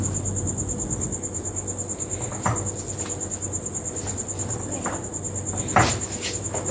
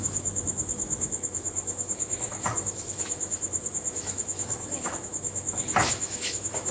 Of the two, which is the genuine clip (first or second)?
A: first